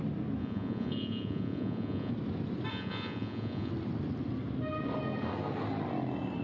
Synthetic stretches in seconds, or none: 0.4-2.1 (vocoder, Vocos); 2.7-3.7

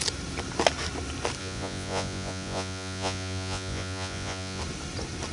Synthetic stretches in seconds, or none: 1.4-4.6 (vocoder, Vocos)

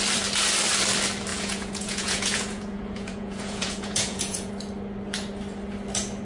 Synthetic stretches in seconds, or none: 1.3-4.5 (vocoder, Vocos)

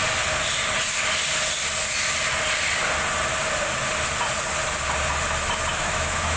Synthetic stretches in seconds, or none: 5.7-6.4 (autoencoder, DAC-VAE)

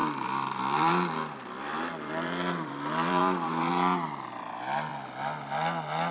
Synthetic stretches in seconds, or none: 0.0-3.7 (vocoder, BigVGAN v2)

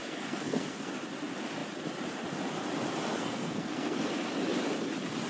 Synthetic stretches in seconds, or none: 0.0-0.9 (codec, SNAC); 3.1-4.1

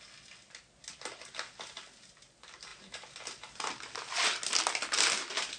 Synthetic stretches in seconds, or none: none